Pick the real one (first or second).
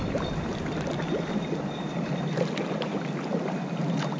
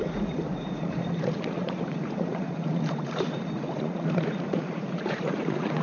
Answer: first